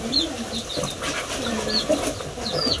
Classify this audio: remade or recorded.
recorded